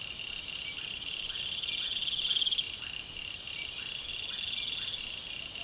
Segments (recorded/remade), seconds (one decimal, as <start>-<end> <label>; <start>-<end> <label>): 0.0-5.6 recorded